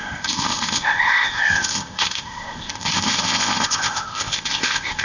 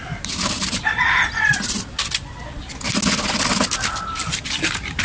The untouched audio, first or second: second